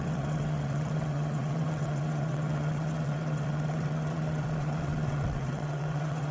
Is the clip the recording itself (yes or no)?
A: no